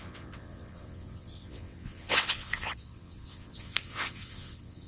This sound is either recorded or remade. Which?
remade